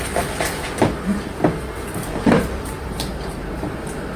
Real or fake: fake